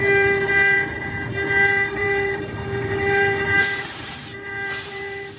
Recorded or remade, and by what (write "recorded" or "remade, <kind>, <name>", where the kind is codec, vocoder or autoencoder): remade, vocoder, BigVGAN v2